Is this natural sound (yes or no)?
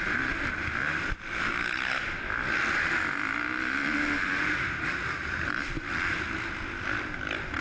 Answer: yes